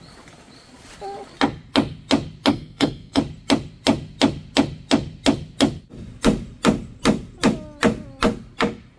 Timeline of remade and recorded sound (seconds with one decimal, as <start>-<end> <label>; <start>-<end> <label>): 0.0-2.5 recorded; 2.5-3.2 remade; 3.2-9.0 recorded